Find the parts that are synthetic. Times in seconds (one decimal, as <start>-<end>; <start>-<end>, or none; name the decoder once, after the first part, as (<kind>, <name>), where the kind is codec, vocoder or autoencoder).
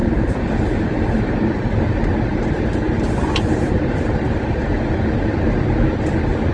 0.0-1.2 (vocoder, BigVGAN v2); 2.7-4.9